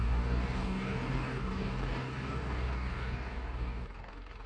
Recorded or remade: remade